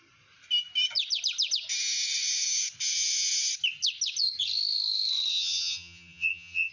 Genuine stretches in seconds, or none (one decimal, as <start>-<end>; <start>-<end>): 0.0-5.3